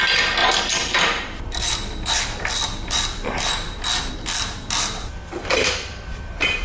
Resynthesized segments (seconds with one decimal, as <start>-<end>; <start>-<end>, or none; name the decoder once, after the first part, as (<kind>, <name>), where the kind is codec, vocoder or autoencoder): 0.4-4.1 (vocoder, BigVGAN v2); 5.0-6.6